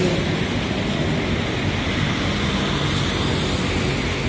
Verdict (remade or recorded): recorded